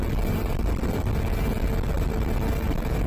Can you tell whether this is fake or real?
real